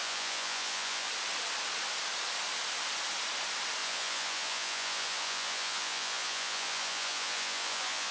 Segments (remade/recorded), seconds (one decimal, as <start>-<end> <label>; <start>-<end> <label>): 0.0-1.1 remade; 1.1-3.8 recorded; 3.8-8.1 remade